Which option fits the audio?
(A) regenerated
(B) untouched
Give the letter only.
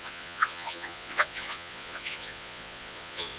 A